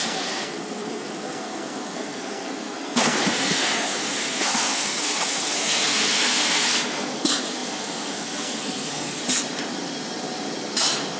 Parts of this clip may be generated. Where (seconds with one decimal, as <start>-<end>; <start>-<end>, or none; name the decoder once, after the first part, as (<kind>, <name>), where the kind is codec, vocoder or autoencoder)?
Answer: 0.0-9.2 (codec, SNAC)